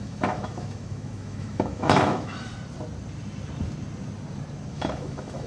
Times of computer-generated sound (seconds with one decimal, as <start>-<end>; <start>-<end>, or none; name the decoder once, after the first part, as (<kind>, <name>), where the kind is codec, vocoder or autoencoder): 0.0-2.5 (autoencoder, DAC-VAE); 4.7-5.5